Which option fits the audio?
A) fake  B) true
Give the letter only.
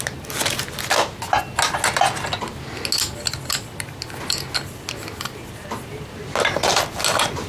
B